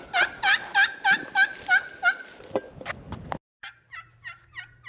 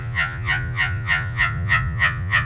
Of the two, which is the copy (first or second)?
second